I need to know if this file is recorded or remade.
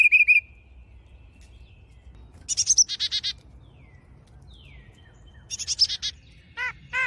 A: recorded